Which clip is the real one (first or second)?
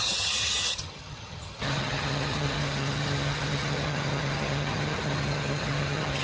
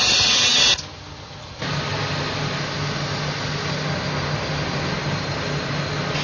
second